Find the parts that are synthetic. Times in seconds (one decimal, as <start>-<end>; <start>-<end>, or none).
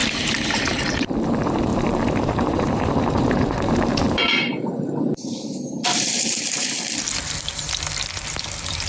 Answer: 1.7-6.8